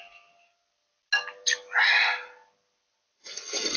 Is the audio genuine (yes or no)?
yes